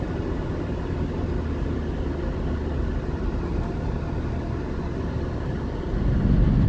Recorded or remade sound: recorded